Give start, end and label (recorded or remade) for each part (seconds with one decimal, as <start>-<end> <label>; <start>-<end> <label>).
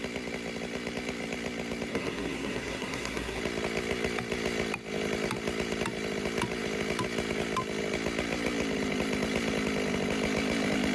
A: 0.0-1.9 recorded; 1.9-3.4 remade; 3.4-10.9 recorded